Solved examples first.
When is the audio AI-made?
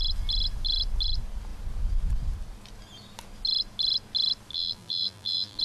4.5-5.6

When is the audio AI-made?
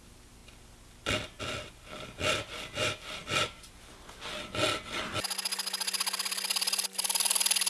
0.0-0.4; 1.4-3.2; 6.0-7.7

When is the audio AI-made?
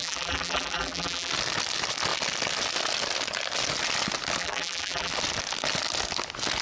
0.0-1.3; 4.4-5.1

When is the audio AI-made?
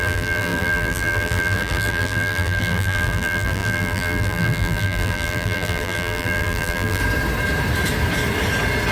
0.0-7.0